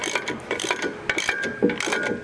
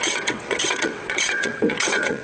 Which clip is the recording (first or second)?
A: first